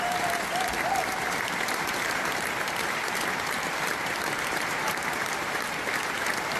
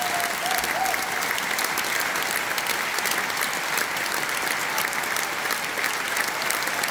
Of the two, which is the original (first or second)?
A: second